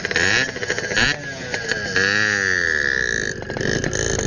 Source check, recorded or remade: recorded